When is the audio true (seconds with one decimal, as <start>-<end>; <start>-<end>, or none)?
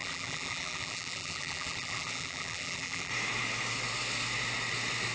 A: 3.1-5.1